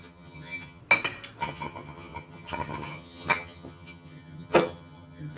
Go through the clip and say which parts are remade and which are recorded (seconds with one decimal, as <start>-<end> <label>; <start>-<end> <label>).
0.0-0.8 remade; 0.8-1.4 recorded; 1.4-5.4 remade